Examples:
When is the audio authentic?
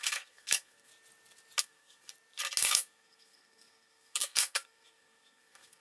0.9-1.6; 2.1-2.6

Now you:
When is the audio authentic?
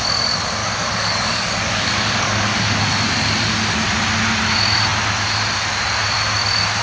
0.0-0.6; 2.8-6.8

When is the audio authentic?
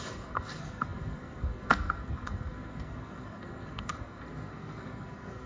none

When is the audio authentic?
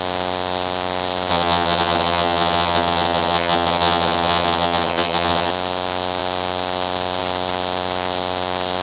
0.0-1.3; 5.5-8.8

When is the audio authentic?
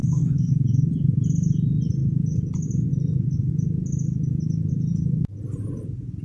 0.5-6.2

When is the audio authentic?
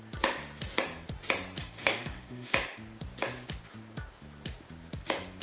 0.0-1.6; 2.5-5.4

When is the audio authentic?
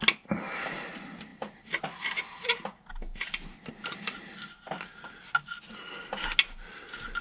0.0-7.2